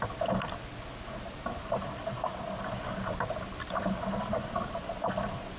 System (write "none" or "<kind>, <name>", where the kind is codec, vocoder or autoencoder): none